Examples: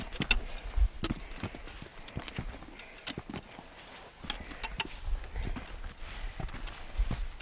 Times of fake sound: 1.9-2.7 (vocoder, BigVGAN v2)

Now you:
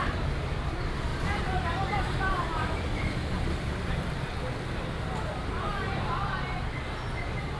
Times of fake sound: 1.1-3.8 (vocoder, BigVGAN v2)

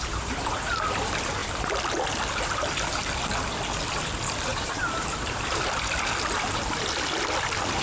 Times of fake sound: 0.0-0.7 (vocoder, BigVGAN v2); 4.5-5.7

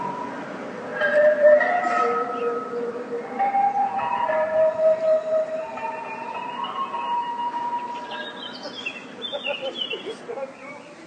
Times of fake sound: 0.9-6.0 (vocoder, BigVGAN v2)

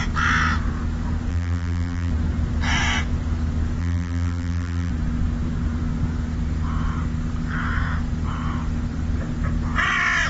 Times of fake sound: 1.3-2.1 (vocoder, BigVGAN v2); 3.8-4.9

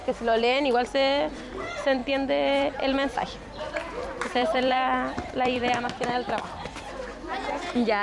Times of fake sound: 0.0-1.5 (vocoder, BigVGAN v2); 2.0-5.6

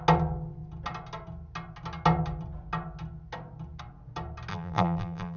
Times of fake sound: 4.5-5.4 (vocoder, BigVGAN v2)

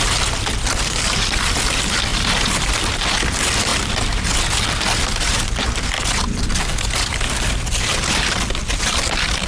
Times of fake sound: 0.0-3.7 (vocoder, BigVGAN v2); 4.8-6.7; 8.5-9.5